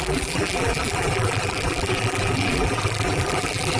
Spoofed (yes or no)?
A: yes